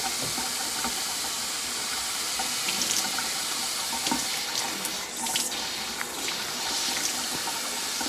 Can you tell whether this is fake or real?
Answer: real